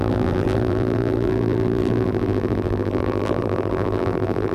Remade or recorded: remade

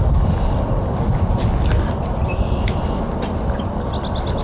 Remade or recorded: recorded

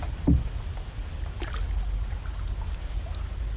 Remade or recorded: recorded